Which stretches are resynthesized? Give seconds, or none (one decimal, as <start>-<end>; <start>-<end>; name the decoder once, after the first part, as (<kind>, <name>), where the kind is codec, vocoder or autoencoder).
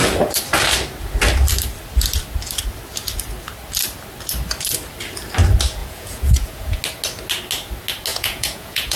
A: 5.8-6.8 (vocoder, Vocos); 8.1-9.0